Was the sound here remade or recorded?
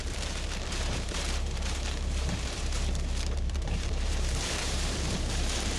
remade